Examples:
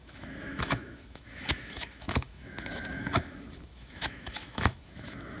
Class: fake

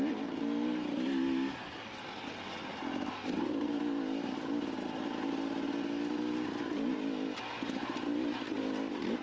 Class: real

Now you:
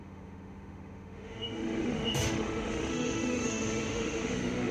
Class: fake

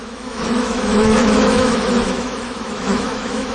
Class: fake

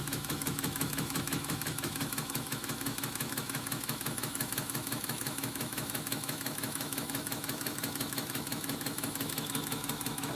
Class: fake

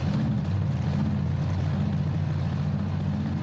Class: real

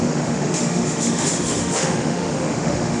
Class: fake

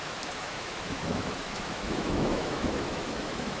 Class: fake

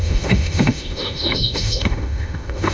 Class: fake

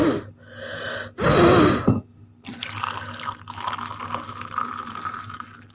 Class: real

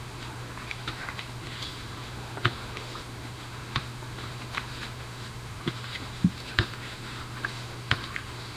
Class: fake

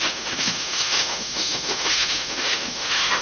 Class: fake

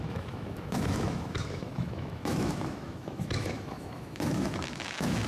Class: fake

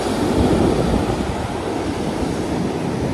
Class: real